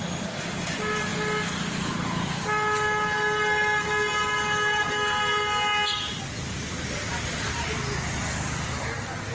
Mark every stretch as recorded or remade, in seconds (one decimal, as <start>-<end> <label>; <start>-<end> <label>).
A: 0.0-9.3 recorded